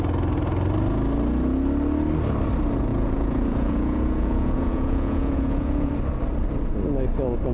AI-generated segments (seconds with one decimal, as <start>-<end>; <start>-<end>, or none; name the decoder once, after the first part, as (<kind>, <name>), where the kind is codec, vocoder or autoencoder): 2.9-5.9 (vocoder, Vocos)